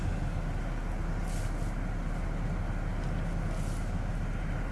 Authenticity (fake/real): real